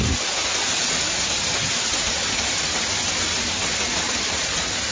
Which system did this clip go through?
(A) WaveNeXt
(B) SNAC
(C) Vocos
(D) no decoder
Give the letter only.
D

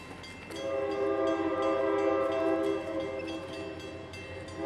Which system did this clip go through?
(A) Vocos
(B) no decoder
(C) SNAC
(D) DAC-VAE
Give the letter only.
B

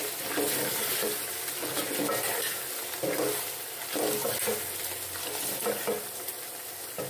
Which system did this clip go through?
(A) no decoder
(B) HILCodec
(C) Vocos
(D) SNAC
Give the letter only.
A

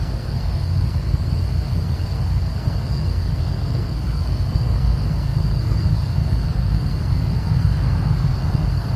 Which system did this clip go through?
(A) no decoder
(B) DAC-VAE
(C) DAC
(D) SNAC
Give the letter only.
D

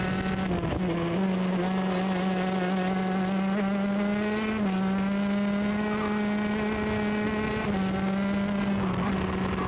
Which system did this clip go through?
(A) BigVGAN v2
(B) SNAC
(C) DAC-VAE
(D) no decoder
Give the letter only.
D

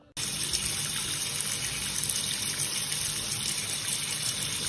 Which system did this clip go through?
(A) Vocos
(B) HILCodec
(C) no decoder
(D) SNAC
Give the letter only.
C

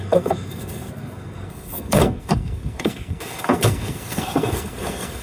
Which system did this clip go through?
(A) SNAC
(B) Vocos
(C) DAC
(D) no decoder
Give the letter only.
A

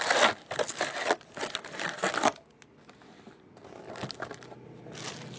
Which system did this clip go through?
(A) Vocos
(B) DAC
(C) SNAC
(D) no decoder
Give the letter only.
D